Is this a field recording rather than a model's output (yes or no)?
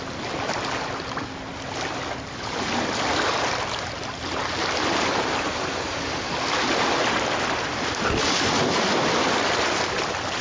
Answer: yes